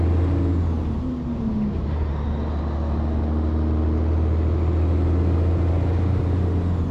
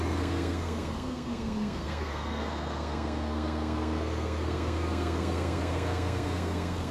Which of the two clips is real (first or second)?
first